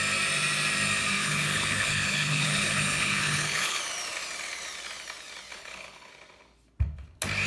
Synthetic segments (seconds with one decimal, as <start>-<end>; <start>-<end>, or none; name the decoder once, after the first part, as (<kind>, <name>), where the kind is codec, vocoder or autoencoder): 1.2-3.8 (codec, HILCodec); 5.5-6.1